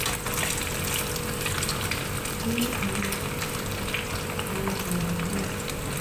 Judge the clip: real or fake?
real